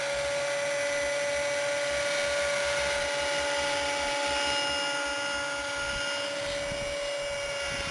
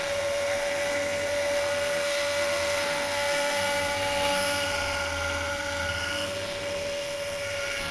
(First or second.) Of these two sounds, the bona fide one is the first